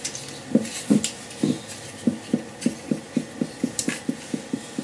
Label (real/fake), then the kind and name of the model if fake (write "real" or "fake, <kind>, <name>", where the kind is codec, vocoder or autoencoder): real